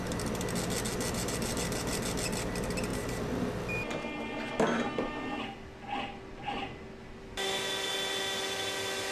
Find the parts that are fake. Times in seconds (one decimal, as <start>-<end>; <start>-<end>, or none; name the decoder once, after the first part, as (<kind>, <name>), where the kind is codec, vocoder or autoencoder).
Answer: none